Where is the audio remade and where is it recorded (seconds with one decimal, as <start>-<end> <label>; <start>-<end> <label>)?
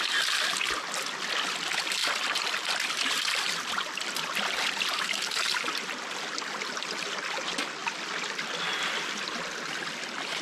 0.0-10.4 recorded